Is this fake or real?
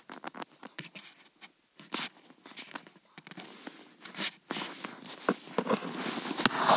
real